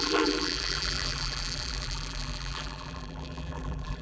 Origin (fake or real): fake